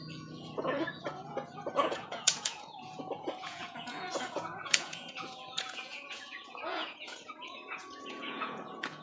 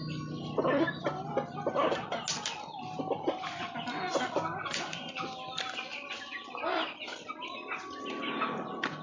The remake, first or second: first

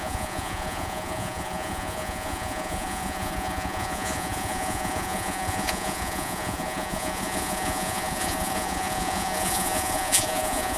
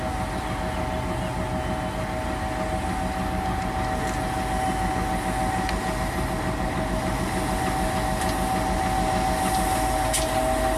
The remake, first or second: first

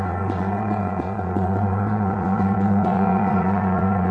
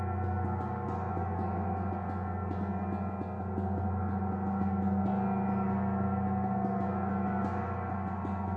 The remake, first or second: first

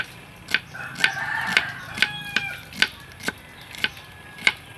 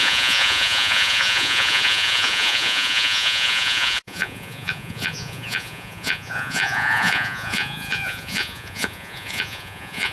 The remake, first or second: second